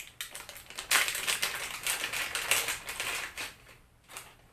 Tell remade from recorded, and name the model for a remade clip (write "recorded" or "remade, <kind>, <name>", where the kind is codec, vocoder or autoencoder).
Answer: recorded